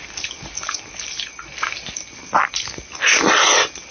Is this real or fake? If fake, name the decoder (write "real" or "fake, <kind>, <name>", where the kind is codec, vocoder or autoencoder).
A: real